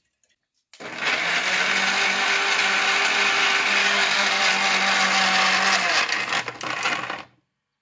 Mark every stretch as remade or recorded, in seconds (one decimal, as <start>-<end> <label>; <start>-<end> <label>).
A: 0.0-3.8 recorded; 3.8-4.4 remade; 4.4-7.8 recorded